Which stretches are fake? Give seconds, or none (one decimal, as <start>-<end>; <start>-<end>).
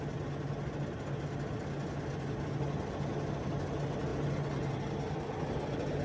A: none